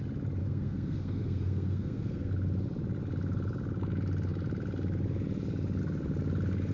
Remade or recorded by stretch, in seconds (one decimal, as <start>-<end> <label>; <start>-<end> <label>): 0.0-0.4 recorded; 0.4-2.3 remade; 2.3-6.7 recorded